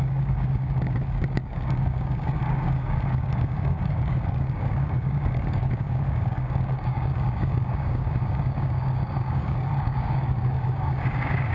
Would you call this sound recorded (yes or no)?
no